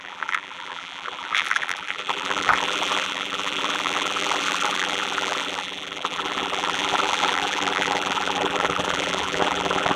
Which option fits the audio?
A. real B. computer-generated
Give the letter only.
B